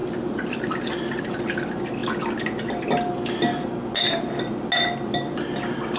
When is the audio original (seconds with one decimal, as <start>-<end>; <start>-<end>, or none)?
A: 1.4-6.0